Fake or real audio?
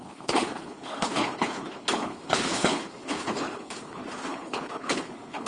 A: fake